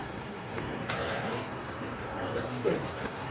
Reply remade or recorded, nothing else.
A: remade